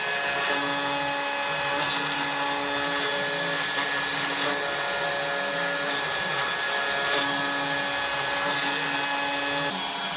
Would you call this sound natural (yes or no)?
yes